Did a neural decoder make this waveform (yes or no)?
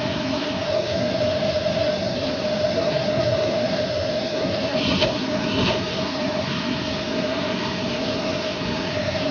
yes